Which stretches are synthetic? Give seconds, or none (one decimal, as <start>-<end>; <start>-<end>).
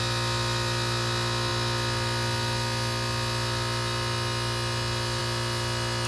none